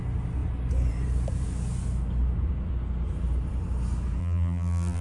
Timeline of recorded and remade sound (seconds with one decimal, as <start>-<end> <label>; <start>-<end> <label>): 0.0-4.2 recorded; 4.2-5.0 remade